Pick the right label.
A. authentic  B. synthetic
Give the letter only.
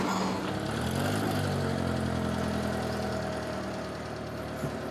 A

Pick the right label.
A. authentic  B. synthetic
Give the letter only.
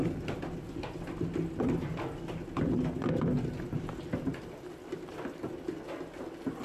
A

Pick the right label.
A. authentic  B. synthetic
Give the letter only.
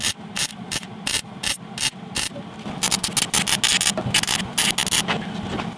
A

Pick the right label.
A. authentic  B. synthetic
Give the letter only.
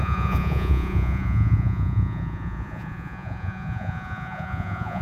B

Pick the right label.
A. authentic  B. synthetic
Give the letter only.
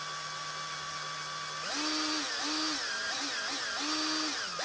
A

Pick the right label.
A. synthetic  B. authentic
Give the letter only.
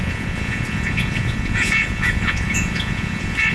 A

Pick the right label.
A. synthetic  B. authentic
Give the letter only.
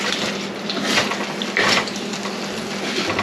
B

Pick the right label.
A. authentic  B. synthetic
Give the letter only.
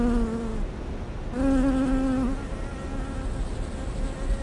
A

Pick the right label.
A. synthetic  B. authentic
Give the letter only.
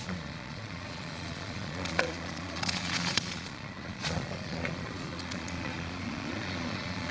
A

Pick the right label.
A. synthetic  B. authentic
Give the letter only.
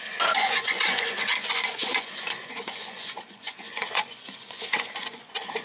A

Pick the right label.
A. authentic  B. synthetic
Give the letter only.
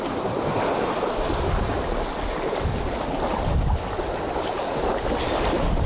A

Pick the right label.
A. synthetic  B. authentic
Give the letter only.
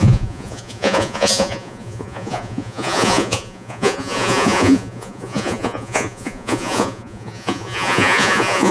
A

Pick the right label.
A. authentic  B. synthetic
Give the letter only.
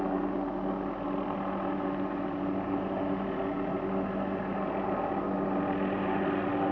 A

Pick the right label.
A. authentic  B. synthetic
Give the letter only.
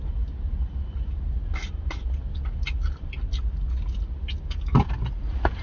A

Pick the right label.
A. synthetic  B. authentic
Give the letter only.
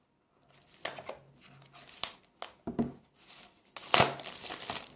B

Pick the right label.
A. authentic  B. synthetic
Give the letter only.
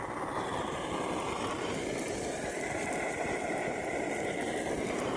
A